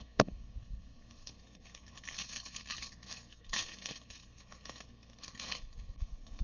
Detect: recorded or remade remade